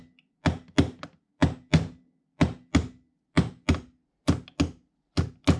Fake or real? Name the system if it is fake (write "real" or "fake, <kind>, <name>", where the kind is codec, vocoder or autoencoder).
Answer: real